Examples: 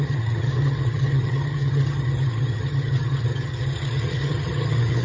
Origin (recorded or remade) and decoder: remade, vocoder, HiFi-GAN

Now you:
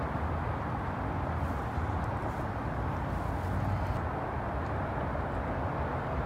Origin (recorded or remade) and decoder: recorded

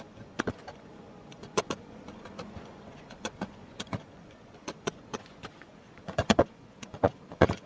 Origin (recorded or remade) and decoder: remade, vocoder, Vocos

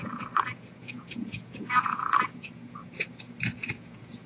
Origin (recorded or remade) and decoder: remade, vocoder, Vocos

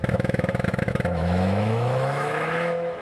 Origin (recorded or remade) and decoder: remade, autoencoder, DAC-VAE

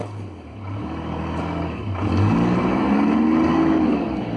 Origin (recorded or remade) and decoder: remade, codec, DAC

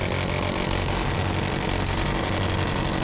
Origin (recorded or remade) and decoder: recorded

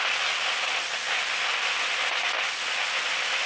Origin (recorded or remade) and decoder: recorded